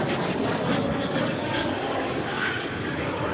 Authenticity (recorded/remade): remade